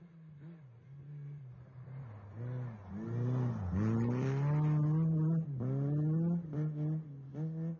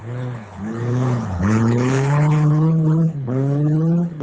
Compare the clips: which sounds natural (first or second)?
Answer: first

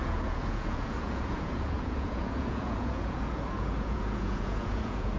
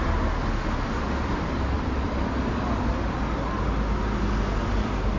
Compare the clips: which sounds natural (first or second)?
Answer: second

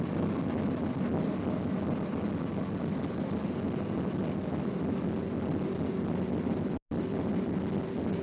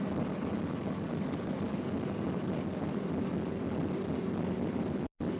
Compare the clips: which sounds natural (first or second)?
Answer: first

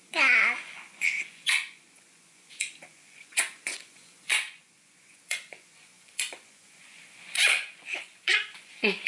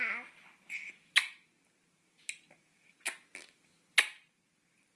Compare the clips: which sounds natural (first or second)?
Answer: second